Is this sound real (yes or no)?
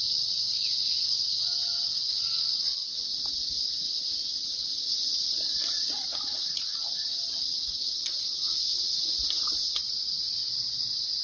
yes